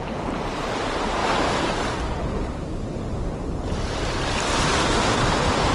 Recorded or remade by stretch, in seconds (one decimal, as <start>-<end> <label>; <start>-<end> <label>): 0.0-1.2 remade; 1.2-4.6 recorded; 4.6-5.7 remade